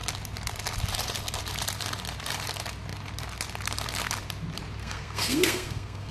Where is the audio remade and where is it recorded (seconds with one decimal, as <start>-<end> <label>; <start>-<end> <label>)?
0.0-4.8 recorded; 4.8-6.1 remade